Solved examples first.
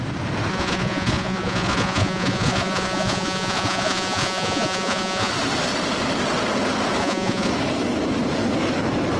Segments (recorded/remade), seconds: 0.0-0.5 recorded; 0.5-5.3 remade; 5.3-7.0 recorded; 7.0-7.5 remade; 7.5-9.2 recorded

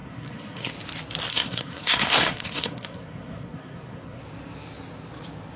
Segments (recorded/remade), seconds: 0.0-0.7 remade; 0.7-1.3 recorded; 1.3-4.2 remade; 4.2-5.6 recorded